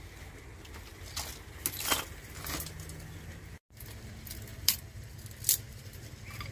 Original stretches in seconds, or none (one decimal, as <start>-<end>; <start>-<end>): 0.0-4.5; 5.2-6.5